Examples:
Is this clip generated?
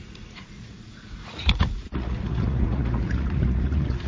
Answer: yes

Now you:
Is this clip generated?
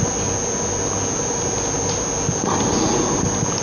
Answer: no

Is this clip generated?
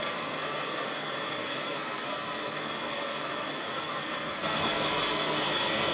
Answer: yes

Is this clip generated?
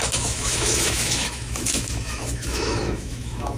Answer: yes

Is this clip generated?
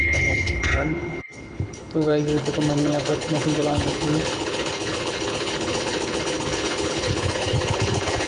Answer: yes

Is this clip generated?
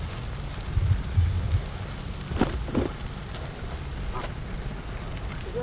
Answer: no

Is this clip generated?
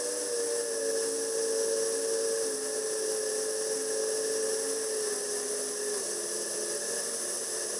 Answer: no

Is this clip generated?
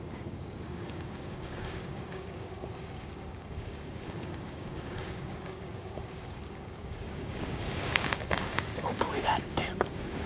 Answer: yes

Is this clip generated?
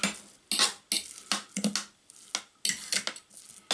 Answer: no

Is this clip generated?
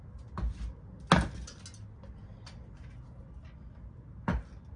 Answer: no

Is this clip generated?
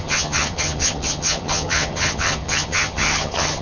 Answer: yes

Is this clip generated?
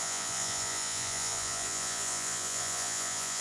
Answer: yes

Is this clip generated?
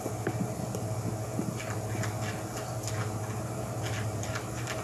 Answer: no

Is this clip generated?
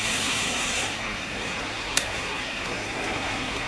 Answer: yes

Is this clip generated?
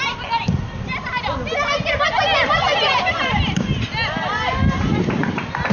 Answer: no